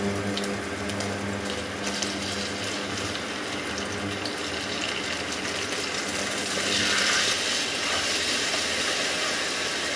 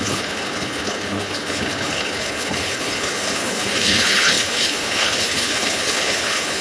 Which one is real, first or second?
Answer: first